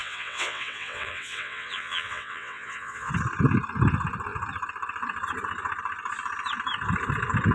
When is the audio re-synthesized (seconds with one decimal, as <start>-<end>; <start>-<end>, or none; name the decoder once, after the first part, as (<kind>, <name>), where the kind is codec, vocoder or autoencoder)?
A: 0.0-3.1 (vocoder, WaveNeXt)